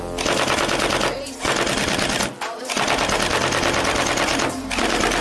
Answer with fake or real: real